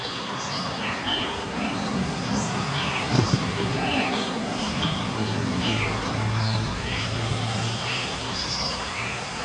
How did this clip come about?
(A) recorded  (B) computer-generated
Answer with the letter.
B